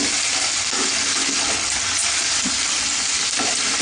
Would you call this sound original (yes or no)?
yes